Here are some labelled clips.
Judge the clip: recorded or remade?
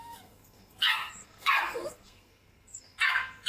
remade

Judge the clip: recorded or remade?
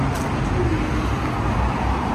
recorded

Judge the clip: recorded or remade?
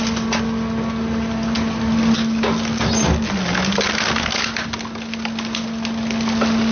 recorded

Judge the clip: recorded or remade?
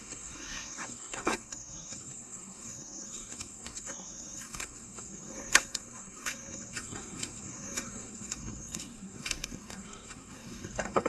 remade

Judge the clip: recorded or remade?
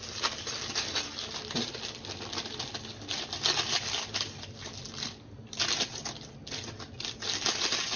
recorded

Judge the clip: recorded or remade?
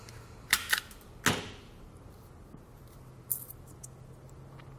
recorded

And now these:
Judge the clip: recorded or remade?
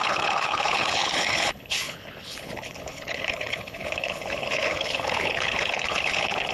remade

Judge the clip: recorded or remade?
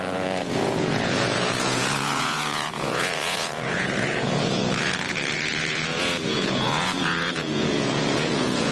remade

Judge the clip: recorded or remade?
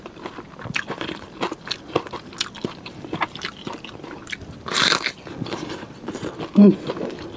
recorded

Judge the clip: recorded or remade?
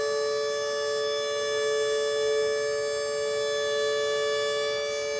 recorded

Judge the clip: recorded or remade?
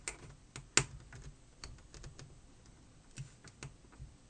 recorded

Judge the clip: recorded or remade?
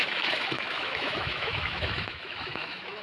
remade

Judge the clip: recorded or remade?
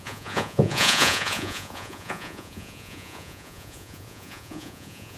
remade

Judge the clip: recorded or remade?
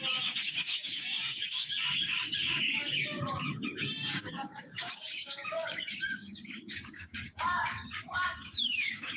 remade